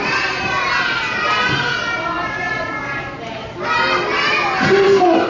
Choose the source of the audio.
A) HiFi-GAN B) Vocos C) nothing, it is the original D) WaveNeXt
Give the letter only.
C